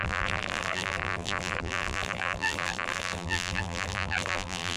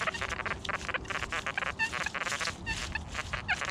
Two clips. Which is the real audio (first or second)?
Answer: second